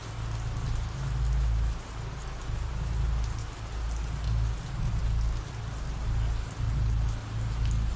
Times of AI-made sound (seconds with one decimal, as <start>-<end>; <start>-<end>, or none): none